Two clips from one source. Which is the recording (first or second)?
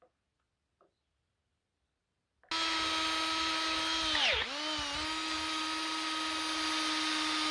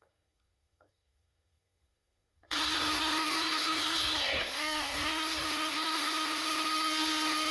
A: first